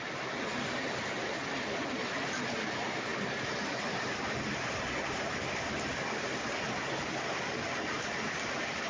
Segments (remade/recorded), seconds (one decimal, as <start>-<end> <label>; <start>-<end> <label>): 0.0-8.9 recorded